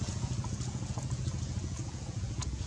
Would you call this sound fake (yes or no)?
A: yes